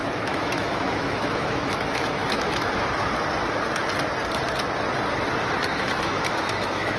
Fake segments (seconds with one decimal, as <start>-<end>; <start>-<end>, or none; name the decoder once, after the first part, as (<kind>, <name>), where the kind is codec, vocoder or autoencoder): 0.0-2.7 (autoencoder, DAC-VAE); 5.7-7.0